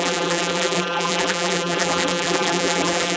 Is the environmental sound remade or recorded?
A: remade